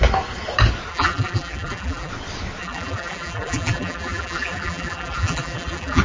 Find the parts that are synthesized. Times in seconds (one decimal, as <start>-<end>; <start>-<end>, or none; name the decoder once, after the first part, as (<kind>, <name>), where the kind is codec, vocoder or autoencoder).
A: 0.9-2.1 (vocoder, BigVGAN v2); 2.6-6.0

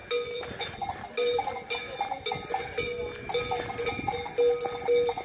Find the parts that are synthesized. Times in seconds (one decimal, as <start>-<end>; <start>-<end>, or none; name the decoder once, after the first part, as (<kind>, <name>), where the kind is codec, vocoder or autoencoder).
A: none

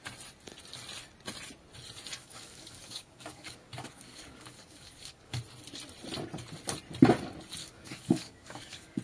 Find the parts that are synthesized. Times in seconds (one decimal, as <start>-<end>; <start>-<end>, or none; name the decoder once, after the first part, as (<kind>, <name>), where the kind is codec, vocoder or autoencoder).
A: 2.2-5.4 (codec, DAC); 7.6-9.0

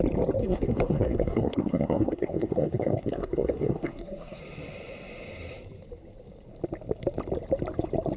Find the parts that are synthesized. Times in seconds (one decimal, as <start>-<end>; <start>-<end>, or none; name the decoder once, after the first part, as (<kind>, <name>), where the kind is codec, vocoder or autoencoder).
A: 0.4-4.4 (codec, SNAC)

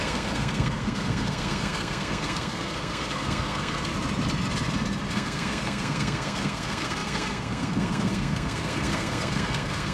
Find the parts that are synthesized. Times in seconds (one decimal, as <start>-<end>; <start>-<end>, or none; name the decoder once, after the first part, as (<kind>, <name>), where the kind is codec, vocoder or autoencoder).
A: 0.0-3.9 (codec, SNAC); 5.1-9.9